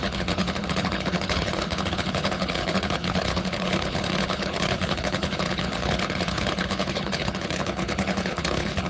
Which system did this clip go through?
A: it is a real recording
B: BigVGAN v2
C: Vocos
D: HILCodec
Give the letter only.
D